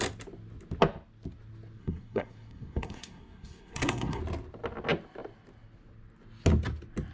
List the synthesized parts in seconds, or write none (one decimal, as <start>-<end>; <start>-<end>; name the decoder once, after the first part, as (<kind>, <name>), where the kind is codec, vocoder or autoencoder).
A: 1.8-4.2 (codec, SNAC)